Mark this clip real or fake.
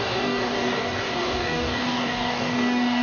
fake